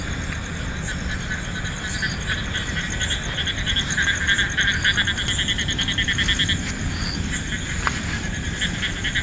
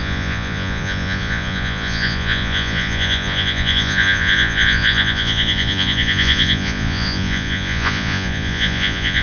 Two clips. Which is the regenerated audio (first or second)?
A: second